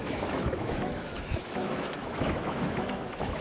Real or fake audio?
fake